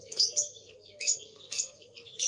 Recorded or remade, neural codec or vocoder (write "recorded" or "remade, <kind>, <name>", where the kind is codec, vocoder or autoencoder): remade, codec, SNAC